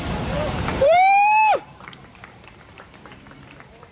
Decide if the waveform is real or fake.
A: fake